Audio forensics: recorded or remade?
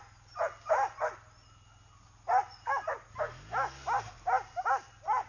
recorded